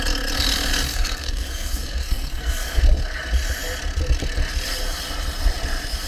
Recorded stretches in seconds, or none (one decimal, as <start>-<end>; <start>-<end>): 0.0-0.9; 2.8-6.1